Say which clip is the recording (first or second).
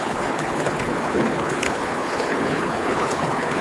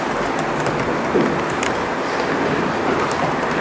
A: second